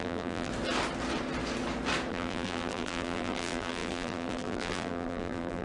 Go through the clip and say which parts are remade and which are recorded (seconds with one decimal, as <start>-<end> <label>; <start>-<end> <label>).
0.0-0.5 remade; 0.5-2.1 recorded; 2.1-5.6 remade